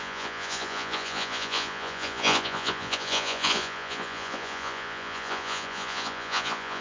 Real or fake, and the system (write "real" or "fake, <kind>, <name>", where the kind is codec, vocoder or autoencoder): fake, vocoder, Vocos